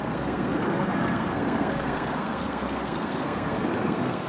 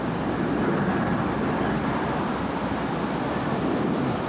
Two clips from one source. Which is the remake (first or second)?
first